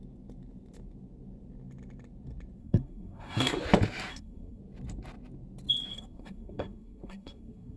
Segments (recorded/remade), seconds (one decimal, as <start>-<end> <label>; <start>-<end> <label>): 0.0-2.6 recorded; 2.6-3.6 remade; 3.6-4.1 recorded; 4.1-4.6 remade; 4.6-5.9 recorded; 5.9-7.8 remade